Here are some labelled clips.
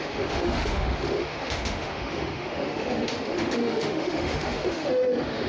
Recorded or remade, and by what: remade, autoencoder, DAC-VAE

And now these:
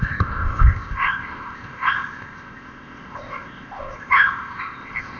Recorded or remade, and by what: remade, codec, ZipCodec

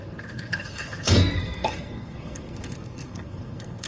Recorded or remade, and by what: remade, codec, SNAC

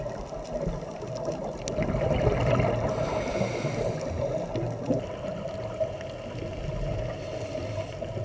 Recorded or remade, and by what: recorded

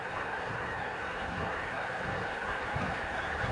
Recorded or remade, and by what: remade, codec, SNAC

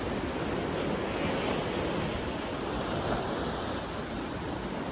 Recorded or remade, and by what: recorded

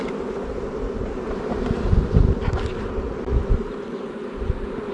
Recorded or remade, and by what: recorded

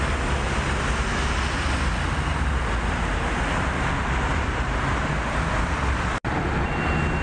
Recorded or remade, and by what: recorded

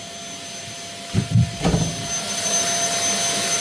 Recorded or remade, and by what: recorded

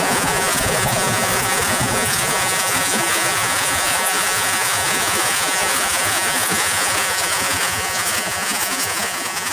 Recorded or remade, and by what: remade, vocoder, Vocos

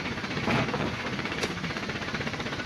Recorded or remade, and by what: remade, vocoder, Vocos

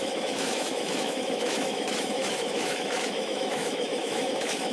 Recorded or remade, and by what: remade, autoencoder, DAC-VAE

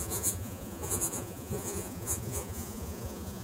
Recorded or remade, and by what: remade, vocoder, Vocos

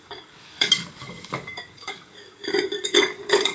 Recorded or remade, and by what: remade, codec, DAC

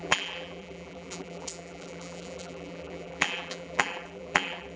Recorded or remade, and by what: remade, vocoder, BigVGAN v2